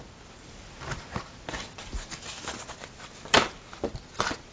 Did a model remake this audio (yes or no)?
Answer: no